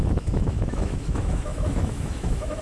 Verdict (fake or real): fake